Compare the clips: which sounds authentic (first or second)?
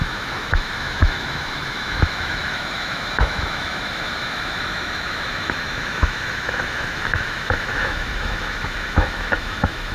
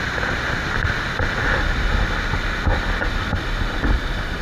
second